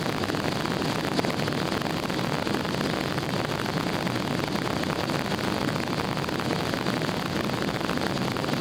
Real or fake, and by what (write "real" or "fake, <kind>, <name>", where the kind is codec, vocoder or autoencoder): real